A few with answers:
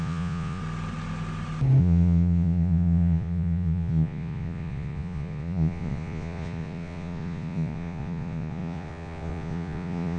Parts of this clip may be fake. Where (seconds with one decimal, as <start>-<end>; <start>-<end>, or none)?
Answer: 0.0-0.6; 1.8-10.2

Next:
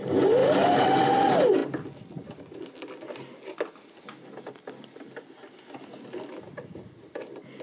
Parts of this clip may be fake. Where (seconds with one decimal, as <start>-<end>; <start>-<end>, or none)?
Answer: none

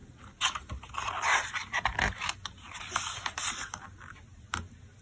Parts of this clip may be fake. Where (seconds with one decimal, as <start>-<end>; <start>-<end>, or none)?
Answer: none

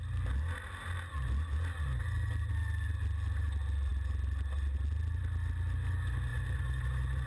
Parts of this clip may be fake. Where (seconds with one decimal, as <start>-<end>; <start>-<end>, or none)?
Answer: 6.3-7.3

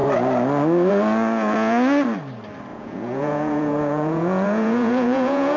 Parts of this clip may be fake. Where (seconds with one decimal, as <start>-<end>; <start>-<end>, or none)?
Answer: 2.7-5.6

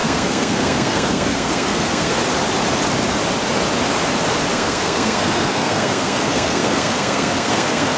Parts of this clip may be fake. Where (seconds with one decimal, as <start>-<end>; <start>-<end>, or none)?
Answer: 0.0-2.2; 4.5-8.0

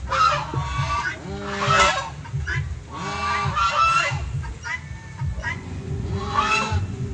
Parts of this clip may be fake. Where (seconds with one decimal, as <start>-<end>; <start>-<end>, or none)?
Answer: 5.3-7.1

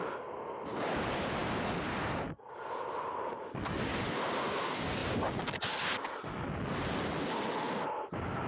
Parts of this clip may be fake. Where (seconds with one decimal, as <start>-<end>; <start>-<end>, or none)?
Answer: none